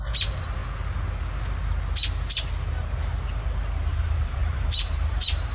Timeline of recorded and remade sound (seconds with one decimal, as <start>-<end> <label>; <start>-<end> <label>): 0.0-0.6 remade; 0.6-3.9 recorded; 3.9-5.5 remade